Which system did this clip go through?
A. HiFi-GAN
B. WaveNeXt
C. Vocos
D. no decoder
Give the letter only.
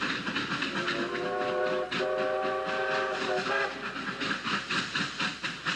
D